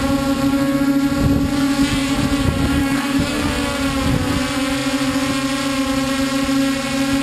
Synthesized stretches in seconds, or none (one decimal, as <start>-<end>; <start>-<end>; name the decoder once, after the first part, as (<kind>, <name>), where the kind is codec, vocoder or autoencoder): 1.5-2.2 (codec, DAC); 2.8-3.5